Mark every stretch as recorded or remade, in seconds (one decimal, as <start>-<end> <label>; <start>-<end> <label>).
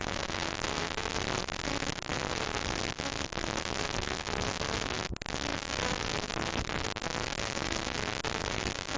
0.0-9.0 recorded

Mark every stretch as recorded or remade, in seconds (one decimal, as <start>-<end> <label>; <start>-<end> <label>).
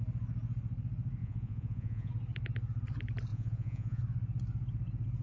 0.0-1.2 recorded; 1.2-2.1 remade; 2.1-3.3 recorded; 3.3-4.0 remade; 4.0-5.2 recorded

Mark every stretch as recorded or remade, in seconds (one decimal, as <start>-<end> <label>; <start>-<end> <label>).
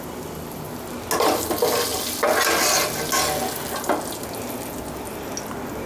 0.0-5.9 recorded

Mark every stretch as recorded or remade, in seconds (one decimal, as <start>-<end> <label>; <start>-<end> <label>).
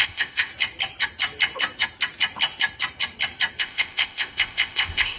0.0-0.5 remade; 0.5-3.6 recorded; 3.6-5.2 remade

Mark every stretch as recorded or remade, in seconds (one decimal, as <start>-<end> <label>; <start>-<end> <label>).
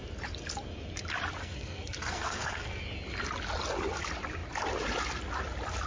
0.0-1.4 recorded; 1.4-2.8 remade; 2.8-5.9 recorded